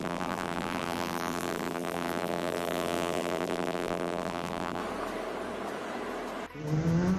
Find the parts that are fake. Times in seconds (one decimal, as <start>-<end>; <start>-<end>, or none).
0.0-4.8